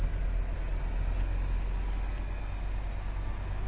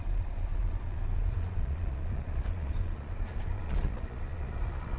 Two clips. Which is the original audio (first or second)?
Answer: first